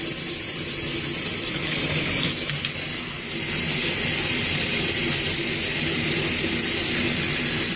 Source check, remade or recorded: recorded